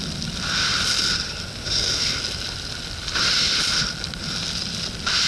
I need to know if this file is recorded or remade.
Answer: recorded